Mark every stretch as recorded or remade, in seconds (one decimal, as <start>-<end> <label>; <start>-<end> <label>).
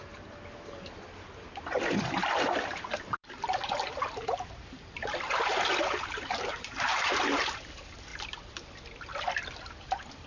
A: 0.0-3.2 recorded; 3.2-7.2 remade; 7.2-10.3 recorded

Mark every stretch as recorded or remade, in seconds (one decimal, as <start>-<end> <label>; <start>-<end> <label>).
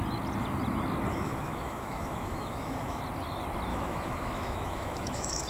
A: 0.0-1.1 recorded; 1.1-3.0 remade; 3.0-3.7 recorded; 3.7-5.5 remade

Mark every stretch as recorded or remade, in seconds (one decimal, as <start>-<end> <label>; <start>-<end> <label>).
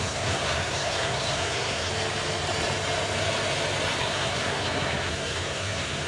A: 0.0-1.9 remade; 1.9-4.0 recorded; 4.0-6.1 remade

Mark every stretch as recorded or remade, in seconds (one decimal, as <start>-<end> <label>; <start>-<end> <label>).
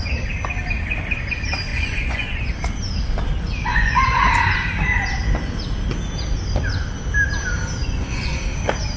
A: 0.0-1.7 recorded; 1.7-2.5 remade; 2.5-3.7 recorded; 3.7-4.3 remade; 4.3-7.8 recorded; 7.8-8.4 remade; 8.4-9.0 recorded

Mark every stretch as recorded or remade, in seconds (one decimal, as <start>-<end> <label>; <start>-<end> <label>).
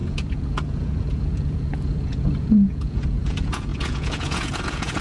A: 0.0-5.0 remade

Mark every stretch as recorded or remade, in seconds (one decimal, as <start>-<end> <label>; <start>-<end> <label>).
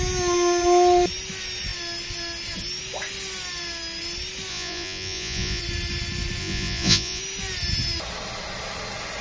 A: 0.0-4.5 recorded; 4.5-5.6 remade; 5.6-6.4 recorded; 6.4-7.2 remade; 7.2-9.2 recorded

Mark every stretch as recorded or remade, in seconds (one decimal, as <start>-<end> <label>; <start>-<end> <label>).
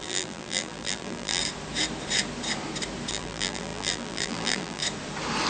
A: 0.0-1.4 remade; 1.4-3.1 recorded; 3.1-4.8 remade; 4.8-5.5 recorded